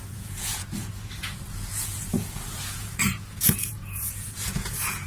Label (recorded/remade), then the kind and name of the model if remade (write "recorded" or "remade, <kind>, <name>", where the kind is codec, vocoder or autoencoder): remade, vocoder, Vocos